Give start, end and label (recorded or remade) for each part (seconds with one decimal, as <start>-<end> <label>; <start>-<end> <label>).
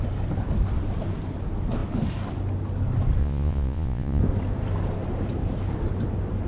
0.0-3.2 recorded; 3.2-4.2 remade; 4.2-6.5 recorded